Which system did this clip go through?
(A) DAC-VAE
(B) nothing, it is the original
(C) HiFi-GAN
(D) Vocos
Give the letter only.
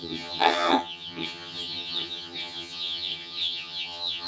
C